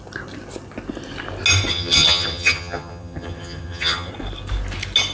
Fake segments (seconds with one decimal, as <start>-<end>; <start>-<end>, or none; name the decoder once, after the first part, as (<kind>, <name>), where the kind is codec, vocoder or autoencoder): 1.7-4.1 (vocoder, HiFi-GAN)